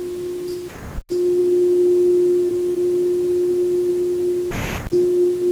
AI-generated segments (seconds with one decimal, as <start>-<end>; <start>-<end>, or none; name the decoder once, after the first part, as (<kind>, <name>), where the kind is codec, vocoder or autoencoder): none